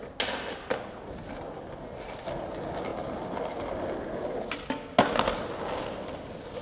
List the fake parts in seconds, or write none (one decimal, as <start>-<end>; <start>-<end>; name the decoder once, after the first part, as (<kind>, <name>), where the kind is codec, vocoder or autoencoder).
none